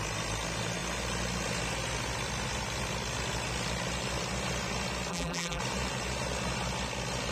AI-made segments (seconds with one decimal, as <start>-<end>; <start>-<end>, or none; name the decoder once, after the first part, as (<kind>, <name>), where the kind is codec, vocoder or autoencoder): 5.1-5.6 (vocoder, BigVGAN v2)